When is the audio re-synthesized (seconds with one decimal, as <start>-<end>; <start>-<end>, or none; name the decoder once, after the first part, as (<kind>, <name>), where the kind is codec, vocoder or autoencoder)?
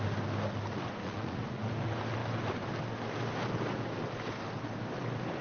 1.0-1.7 (vocoder, Vocos)